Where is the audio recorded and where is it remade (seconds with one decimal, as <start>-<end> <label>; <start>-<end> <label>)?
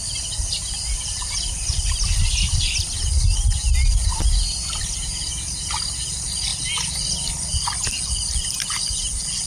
0.0-9.5 recorded